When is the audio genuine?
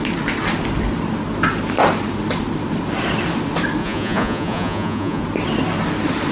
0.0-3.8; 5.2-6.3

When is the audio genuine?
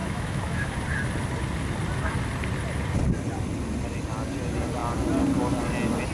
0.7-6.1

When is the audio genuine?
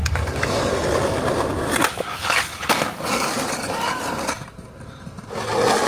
0.7-2.1; 4.3-5.9